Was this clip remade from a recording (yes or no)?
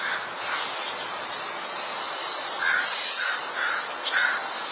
no